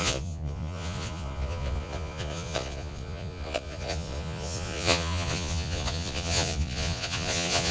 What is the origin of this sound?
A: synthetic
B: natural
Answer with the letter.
A